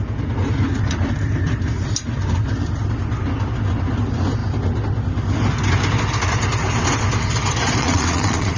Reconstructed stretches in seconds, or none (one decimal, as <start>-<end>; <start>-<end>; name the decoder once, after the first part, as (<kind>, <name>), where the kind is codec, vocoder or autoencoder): 7.8-8.6 (vocoder, Vocos)